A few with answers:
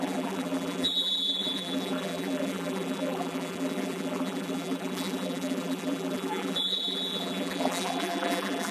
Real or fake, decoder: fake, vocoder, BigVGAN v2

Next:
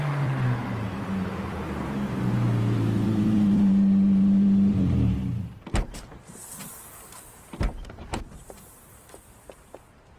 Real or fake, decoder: fake, vocoder, BigVGAN v2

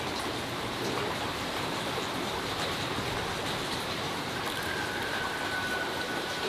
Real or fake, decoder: real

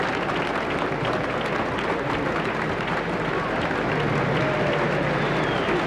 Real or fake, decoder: real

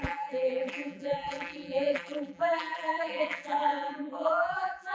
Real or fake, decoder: fake, vocoder, BigVGAN v2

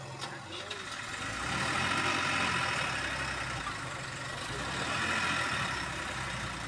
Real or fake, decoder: real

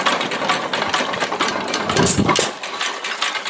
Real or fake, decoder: real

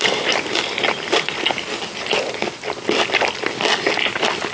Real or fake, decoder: real